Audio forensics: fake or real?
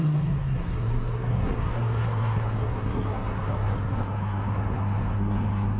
fake